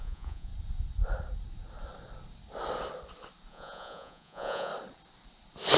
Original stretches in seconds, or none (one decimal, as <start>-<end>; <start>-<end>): 0.5-3.5; 4.7-5.8